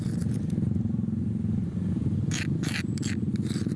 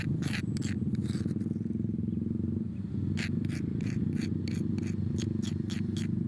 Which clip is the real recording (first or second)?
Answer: second